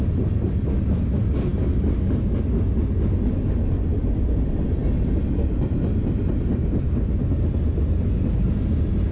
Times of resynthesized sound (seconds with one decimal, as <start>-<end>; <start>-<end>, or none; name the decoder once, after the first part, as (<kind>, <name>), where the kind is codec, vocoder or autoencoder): 1.7-2.4 (vocoder, BigVGAN v2)

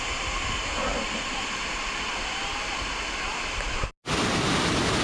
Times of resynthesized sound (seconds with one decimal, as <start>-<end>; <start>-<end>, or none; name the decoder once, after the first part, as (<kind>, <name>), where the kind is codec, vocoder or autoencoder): 0.9-3.9 (vocoder, BigVGAN v2)

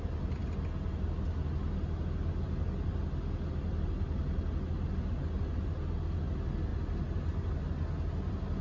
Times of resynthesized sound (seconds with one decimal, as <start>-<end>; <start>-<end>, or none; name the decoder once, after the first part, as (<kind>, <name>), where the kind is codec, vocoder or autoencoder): none

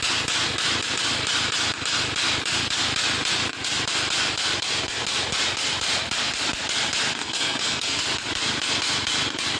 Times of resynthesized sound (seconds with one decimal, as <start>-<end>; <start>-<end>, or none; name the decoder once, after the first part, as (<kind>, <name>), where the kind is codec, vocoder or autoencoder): 7.2-8.0 (codec, SNAC)

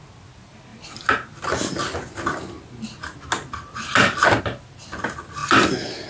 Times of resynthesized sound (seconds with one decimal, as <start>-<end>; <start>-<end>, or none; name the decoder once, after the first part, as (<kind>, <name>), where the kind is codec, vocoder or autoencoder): none

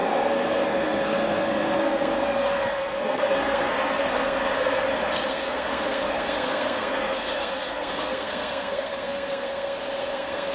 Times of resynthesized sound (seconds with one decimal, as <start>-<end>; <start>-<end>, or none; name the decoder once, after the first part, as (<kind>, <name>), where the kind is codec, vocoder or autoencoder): 0.0-4.8 (codec, SNAC); 5.3-10.5